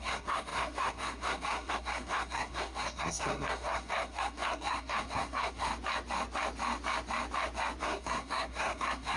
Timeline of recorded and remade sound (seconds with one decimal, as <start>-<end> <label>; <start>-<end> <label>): 0.0-5.7 remade; 5.7-7.8 recorded; 7.8-9.2 remade